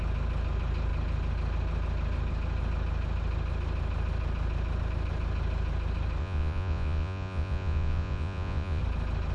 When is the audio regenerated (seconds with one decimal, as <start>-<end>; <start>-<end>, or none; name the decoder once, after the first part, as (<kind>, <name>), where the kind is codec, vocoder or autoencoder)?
6.2-8.8 (vocoder, Vocos)